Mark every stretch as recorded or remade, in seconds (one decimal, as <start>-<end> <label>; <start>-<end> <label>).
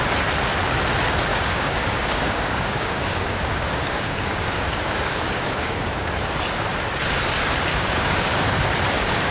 0.0-1.3 recorded; 1.3-6.1 remade; 6.1-7.7 recorded; 7.7-8.7 remade; 8.7-9.3 recorded